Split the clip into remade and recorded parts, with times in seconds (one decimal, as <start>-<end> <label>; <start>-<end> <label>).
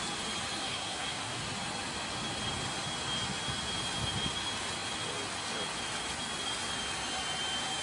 0.0-0.6 recorded; 0.6-1.4 remade; 1.4-7.8 recorded